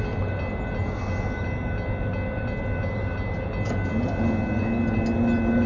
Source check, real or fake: real